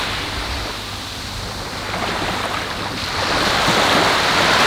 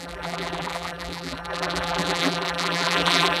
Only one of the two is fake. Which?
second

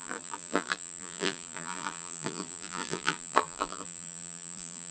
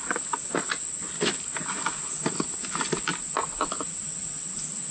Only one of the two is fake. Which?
first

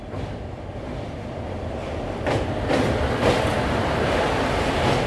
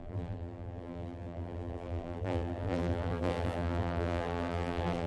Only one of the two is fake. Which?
second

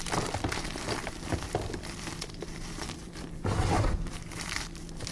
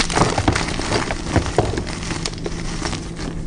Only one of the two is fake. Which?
first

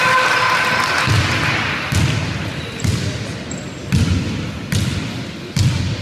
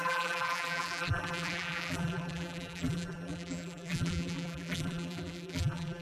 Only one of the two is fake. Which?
second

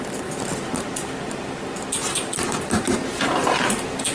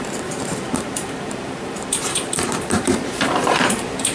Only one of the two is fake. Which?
second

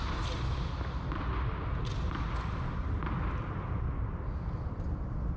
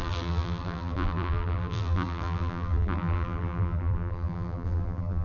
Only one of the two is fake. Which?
second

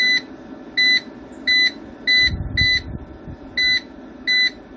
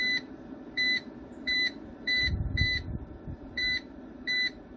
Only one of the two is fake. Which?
second